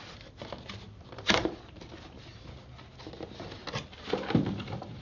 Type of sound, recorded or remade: recorded